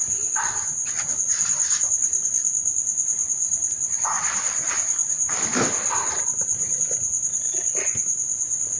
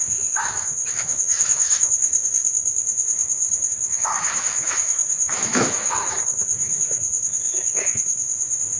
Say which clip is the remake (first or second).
second